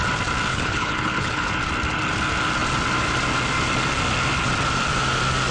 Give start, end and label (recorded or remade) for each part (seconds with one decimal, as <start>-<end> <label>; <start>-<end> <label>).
0.0-0.5 recorded; 0.5-1.5 remade; 1.5-5.5 recorded